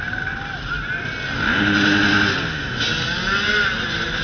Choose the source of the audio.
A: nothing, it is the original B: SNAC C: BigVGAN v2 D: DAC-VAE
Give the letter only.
A